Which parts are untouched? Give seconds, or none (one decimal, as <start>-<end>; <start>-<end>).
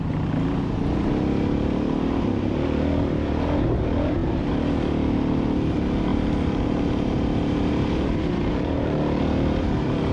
0.0-6.1; 9.2-10.1